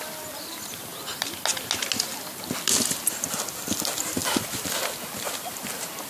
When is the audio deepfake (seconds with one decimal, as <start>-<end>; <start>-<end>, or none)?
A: none